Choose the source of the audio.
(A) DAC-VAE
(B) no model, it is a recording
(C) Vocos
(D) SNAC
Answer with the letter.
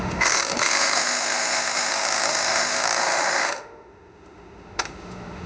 A